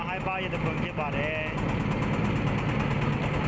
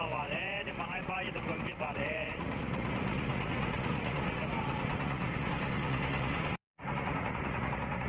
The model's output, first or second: second